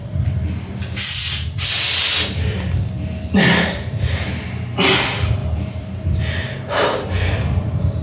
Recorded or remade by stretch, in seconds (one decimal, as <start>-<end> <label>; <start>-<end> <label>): 0.0-5.4 recorded; 5.4-6.2 remade; 6.2-8.0 recorded

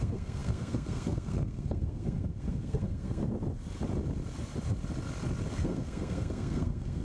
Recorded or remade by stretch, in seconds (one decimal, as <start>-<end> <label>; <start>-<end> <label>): 0.0-3.2 remade; 3.2-5.5 recorded; 5.5-7.0 remade

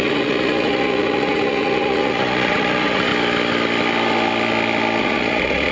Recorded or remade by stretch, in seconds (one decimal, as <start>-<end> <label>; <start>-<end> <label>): 0.0-3.1 remade; 3.1-5.0 recorded; 5.0-5.7 remade

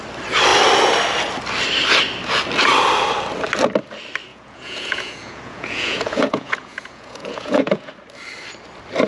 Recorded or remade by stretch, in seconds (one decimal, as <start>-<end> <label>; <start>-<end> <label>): 0.0-4.3 recorded; 4.3-7.9 remade; 7.9-9.1 recorded

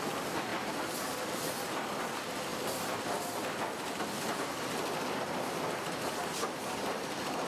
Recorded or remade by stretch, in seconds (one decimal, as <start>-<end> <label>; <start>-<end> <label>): 0.0-7.5 recorded

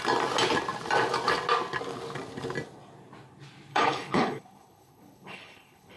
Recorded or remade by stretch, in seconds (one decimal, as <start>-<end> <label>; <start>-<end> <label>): 0.0-3.7 recorded; 3.7-6.0 remade